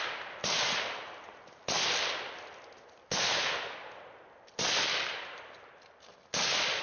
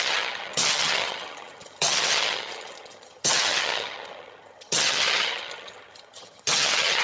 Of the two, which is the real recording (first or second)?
first